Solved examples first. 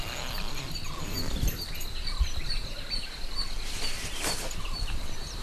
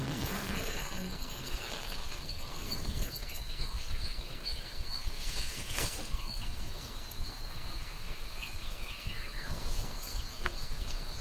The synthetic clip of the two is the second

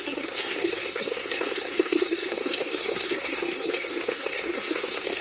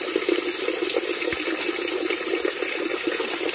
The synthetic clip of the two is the first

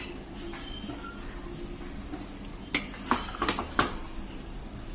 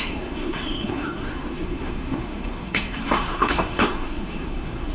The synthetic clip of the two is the second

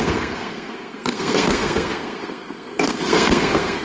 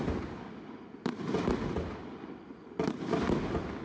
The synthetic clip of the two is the first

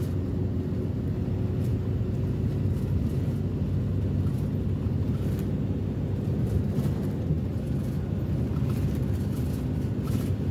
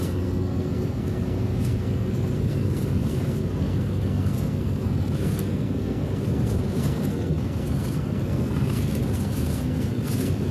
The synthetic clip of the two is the second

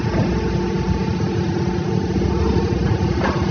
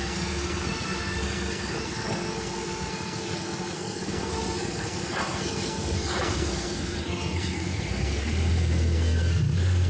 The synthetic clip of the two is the second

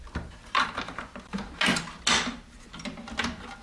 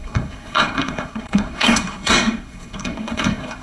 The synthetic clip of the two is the second